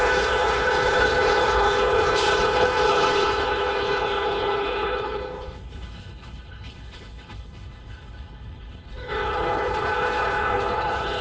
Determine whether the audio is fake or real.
fake